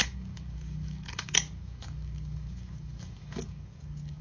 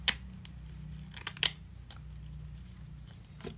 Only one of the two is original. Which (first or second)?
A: second